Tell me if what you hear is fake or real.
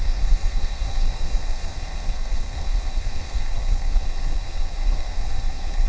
fake